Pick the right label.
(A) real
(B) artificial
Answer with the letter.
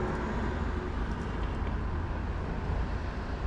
A